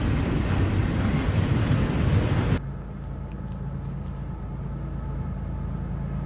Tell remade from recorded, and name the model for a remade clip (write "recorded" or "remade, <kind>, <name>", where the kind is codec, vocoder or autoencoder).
recorded